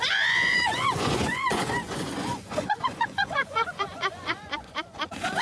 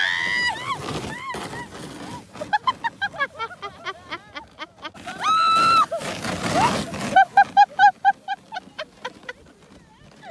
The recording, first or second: second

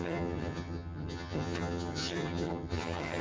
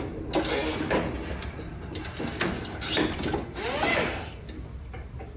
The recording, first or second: second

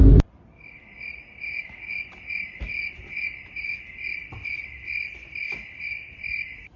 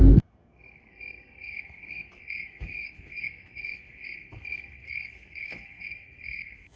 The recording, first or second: first